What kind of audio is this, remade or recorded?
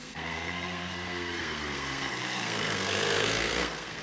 remade